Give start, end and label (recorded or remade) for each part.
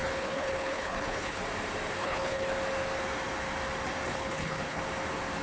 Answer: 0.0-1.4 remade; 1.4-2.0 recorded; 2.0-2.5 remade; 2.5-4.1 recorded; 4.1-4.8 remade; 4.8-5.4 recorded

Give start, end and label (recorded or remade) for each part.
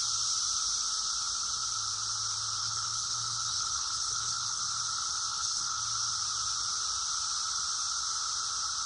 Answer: 0.0-2.6 recorded; 2.6-4.6 remade; 4.6-5.3 recorded; 5.3-5.8 remade; 5.8-8.9 recorded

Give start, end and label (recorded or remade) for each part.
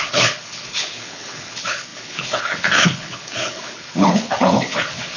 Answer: 0.0-5.2 remade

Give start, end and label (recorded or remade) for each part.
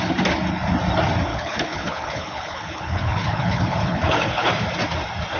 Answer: 0.0-1.3 recorded; 1.3-4.5 remade; 4.5-5.4 recorded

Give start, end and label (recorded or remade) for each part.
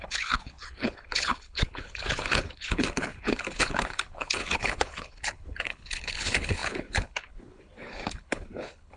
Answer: 0.0-9.0 remade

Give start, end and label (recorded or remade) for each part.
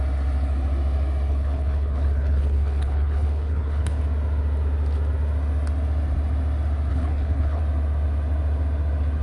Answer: 0.0-1.3 recorded; 1.3-4.0 remade; 4.0-6.9 recorded; 6.9-7.6 remade; 7.6-9.2 recorded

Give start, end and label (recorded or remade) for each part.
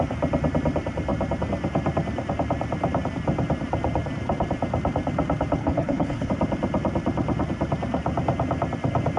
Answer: 0.0-5.6 recorded; 5.6-6.3 remade; 6.3-9.2 recorded